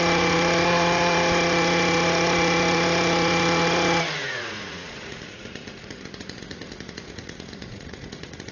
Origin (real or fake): fake